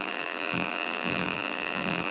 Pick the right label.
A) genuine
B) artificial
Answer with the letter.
B